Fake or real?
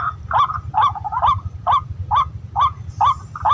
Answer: real